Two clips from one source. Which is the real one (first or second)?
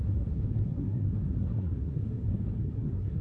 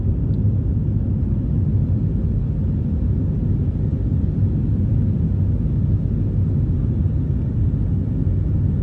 second